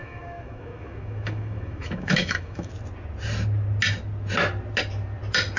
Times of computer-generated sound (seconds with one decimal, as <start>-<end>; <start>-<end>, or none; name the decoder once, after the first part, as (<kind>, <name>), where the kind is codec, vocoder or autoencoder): 0.0-2.7 (autoencoder, DAC-VAE)